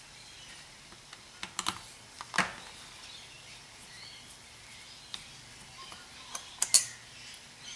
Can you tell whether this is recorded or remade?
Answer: recorded